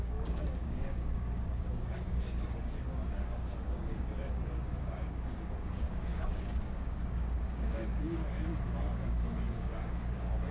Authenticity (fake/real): fake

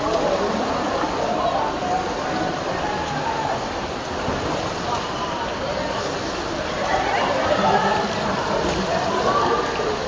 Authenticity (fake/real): real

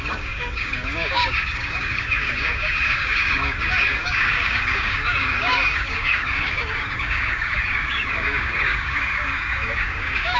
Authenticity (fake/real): fake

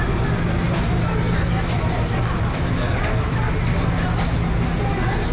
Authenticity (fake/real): real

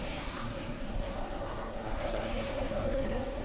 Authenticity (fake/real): fake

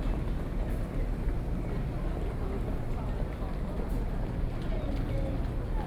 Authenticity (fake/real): real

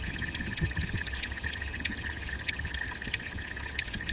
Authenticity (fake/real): fake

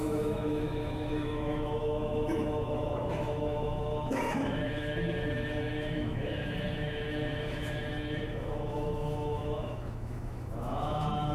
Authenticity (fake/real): fake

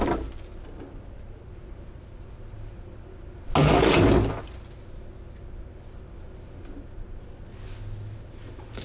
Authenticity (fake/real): real